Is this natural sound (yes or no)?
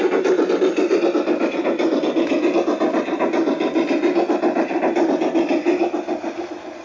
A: yes